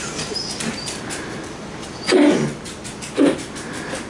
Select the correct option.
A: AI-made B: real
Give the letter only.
B